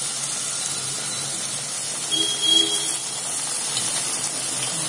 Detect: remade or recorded recorded